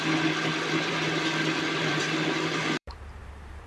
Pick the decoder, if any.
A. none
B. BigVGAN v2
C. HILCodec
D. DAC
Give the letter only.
B